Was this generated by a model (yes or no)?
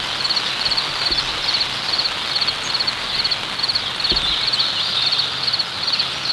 no